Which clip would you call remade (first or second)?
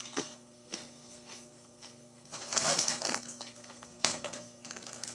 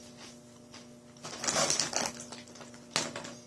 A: first